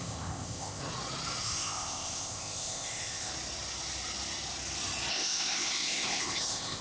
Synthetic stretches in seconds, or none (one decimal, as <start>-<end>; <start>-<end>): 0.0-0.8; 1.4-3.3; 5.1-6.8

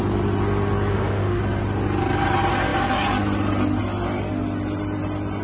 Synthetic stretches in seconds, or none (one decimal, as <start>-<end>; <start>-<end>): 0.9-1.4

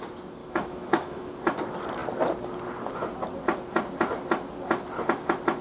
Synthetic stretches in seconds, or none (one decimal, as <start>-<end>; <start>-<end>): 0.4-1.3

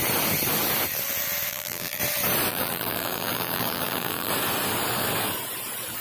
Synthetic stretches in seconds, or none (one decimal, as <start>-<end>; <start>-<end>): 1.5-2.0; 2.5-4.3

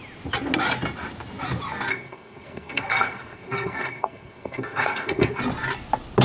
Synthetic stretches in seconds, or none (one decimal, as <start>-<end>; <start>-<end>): 1.9-5.4

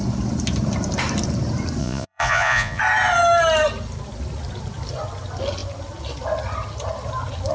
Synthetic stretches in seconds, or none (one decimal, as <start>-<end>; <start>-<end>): 1.8-2.8